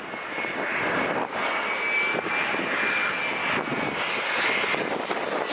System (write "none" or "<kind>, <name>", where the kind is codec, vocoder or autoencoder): none